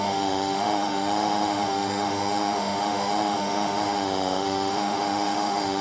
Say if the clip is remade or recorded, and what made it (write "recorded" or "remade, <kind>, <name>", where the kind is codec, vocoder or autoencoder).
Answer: remade, autoencoder, DAC-VAE